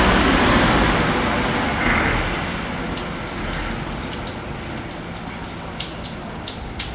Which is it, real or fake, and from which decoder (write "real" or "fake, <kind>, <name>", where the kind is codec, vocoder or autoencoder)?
real